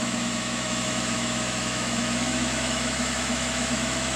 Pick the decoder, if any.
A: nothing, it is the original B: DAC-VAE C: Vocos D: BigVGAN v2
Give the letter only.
B